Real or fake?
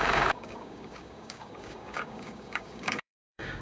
fake